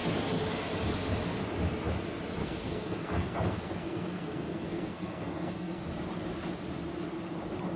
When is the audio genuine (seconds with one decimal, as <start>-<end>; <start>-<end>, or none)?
0.0-2.4; 5.8-7.8